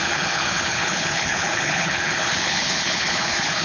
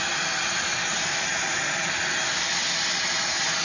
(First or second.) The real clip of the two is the second